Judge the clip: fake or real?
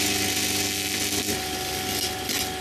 real